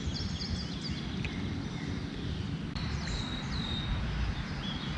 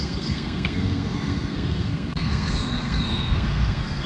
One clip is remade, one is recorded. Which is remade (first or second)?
second